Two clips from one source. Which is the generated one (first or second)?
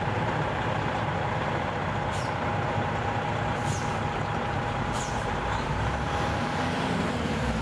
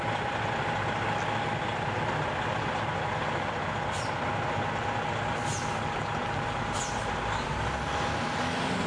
first